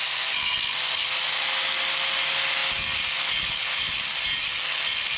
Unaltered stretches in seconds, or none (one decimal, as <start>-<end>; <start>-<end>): 0.0-5.2